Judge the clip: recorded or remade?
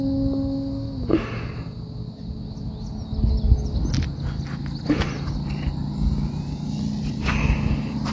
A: recorded